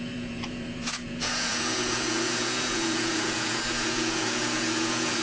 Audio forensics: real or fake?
fake